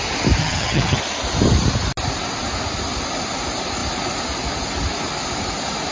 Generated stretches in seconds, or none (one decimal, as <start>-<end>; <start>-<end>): 0.4-1.0